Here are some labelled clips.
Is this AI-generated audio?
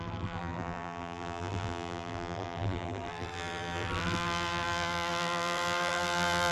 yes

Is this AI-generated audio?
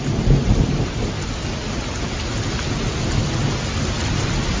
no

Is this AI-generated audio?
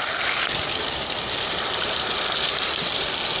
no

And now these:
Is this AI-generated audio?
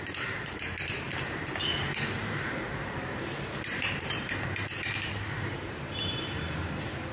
yes